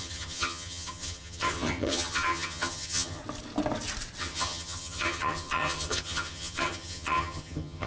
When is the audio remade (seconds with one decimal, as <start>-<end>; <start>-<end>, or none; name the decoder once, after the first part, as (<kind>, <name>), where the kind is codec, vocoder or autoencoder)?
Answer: 0.0-3.2 (vocoder, HiFi-GAN); 4.2-7.9